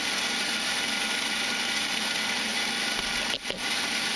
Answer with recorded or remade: recorded